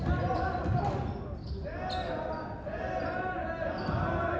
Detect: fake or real real